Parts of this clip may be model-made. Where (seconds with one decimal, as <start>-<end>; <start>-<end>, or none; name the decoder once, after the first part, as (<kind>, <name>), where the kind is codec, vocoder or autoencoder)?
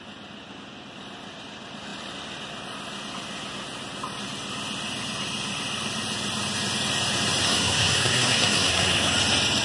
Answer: 7.4-9.1 (codec, SNAC)